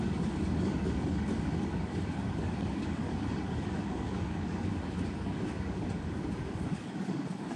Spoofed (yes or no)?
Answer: yes